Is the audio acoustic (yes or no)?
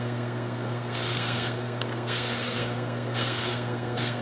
no